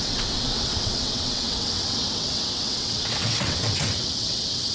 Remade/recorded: remade